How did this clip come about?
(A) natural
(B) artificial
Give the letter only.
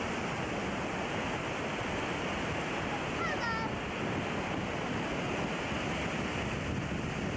A